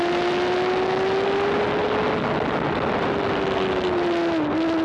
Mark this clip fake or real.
real